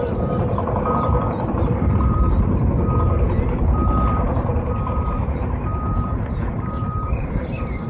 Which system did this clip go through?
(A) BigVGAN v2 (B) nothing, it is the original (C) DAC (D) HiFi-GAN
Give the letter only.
A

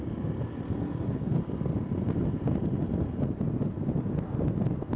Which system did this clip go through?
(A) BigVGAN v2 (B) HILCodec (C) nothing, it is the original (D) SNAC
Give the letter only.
C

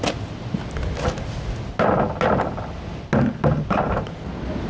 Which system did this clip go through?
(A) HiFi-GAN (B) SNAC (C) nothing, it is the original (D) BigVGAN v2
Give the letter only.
C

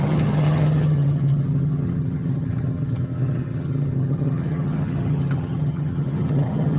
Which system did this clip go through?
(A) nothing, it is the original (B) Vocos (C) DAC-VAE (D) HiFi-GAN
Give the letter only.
D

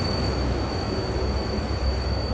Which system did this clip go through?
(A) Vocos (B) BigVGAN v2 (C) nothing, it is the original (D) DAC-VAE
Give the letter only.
D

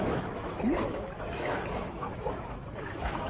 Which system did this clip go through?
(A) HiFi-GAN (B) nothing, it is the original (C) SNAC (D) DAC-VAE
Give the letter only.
D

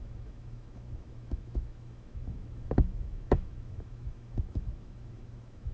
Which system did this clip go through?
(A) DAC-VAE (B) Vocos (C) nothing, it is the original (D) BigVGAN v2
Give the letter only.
A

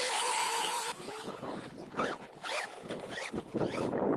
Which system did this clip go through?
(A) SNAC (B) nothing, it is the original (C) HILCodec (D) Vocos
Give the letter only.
C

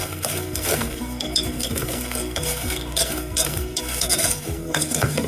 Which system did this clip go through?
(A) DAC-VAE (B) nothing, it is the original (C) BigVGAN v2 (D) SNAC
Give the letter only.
D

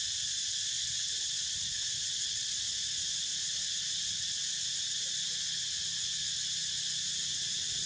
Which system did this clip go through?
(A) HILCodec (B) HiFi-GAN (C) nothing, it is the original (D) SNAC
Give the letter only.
C